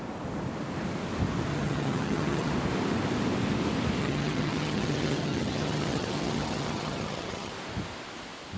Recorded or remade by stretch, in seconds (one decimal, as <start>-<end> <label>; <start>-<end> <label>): 0.0-1.5 recorded; 1.5-2.5 remade; 2.5-4.0 recorded; 4.0-7.5 remade; 7.5-8.6 recorded